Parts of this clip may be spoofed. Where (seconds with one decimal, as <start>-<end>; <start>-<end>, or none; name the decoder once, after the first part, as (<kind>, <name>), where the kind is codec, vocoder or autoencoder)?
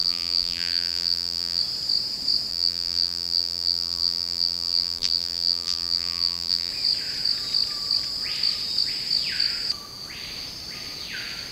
0.0-1.6 (vocoder, BigVGAN v2); 2.5-6.7